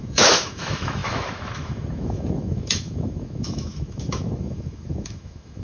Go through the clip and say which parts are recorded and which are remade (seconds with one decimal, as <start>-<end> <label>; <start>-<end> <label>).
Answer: 0.0-5.6 remade

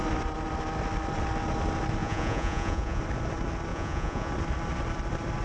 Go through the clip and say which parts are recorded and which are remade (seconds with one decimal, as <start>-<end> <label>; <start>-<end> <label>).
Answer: 0.0-2.0 recorded; 2.0-3.0 remade; 3.0-3.7 recorded; 3.7-4.3 remade; 4.3-5.4 recorded

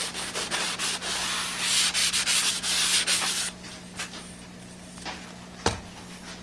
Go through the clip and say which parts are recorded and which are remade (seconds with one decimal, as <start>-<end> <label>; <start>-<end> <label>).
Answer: 0.0-2.0 recorded; 2.0-2.5 remade; 2.5-6.4 recorded

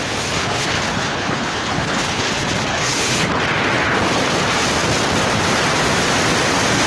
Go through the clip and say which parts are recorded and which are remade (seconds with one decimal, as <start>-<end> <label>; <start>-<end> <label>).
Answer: 0.0-0.4 recorded; 0.4-2.3 remade; 2.3-2.7 recorded; 2.7-3.3 remade; 3.3-6.9 recorded

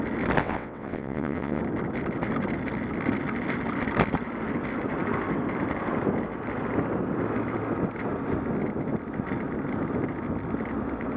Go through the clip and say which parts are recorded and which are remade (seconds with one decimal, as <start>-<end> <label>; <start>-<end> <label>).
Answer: 0.0-0.4 recorded; 0.4-1.6 remade; 1.6-11.2 recorded